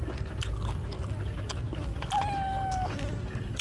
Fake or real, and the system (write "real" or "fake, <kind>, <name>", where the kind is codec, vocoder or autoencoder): real